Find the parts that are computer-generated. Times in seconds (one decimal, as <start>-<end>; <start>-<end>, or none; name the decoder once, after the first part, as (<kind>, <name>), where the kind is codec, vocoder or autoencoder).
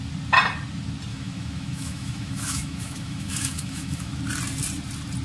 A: 1.1-4.2 (autoencoder, DAC-VAE)